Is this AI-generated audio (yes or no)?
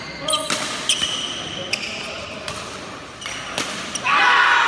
no